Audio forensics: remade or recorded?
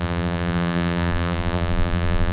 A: remade